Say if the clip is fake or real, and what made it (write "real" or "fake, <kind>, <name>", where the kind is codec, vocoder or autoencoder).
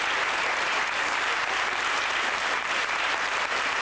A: fake, vocoder, BigVGAN v2